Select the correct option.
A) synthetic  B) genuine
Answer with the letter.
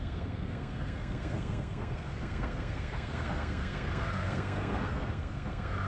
A